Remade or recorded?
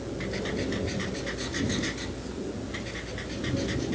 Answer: recorded